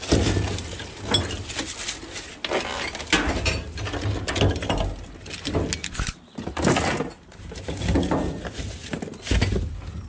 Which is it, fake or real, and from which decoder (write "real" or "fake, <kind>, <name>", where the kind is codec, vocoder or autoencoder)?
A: real